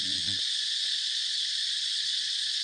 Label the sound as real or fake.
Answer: fake